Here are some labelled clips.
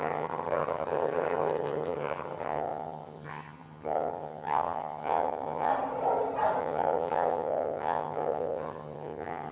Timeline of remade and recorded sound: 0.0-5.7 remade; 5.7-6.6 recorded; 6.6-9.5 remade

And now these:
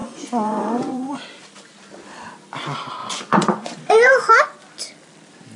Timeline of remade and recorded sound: 0.0-1.1 remade; 1.1-3.0 recorded; 3.0-4.3 remade; 4.3-5.6 recorded

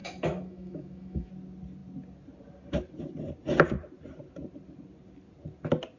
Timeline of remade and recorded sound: 0.0-1.3 remade; 1.3-6.0 recorded

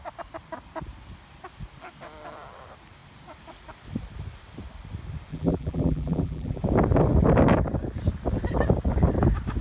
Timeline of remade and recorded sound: 0.0-5.3 recorded; 5.3-6.6 remade; 6.6-9.6 recorded

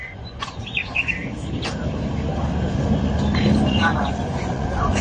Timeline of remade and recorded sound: 0.0-1.2 remade; 1.2-3.7 recorded; 3.7-5.0 remade

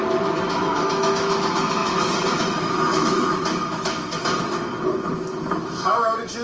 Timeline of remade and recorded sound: 0.0-6.4 remade